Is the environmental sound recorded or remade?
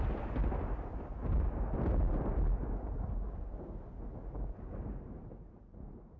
recorded